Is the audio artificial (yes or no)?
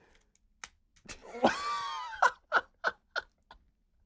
no